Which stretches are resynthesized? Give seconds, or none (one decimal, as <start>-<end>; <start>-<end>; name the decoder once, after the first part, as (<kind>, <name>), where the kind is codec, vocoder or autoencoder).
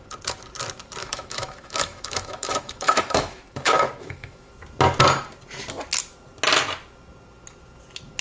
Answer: 1.0-4.5 (autoencoder, DAC-VAE)